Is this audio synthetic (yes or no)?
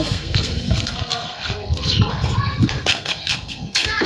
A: yes